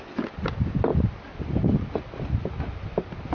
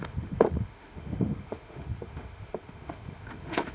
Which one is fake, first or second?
second